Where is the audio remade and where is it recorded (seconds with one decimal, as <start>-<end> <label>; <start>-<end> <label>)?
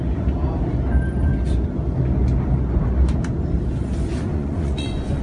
0.0-4.3 recorded; 4.3-5.2 remade